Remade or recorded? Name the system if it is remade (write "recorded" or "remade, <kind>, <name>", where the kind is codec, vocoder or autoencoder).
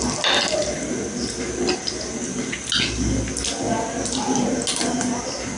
recorded